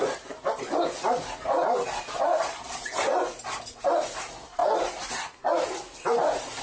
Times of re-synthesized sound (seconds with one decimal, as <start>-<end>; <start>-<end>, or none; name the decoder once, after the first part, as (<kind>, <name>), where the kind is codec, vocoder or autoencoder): 3.1-3.7 (vocoder, BigVGAN v2)